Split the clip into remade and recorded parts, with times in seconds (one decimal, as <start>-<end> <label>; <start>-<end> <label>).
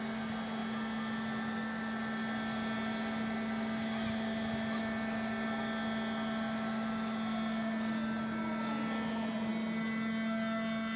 0.0-11.0 recorded